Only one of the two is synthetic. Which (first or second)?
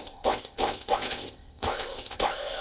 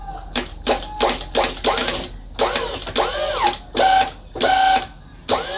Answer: first